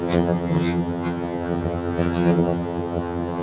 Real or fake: fake